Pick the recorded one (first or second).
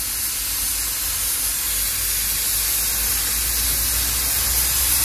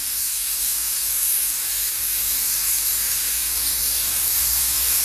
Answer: first